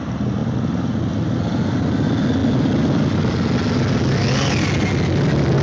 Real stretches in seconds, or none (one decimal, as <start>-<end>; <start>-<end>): 0.0-5.6